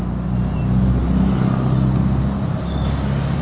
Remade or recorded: recorded